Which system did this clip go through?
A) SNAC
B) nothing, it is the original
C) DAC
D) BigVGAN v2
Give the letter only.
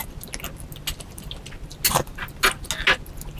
B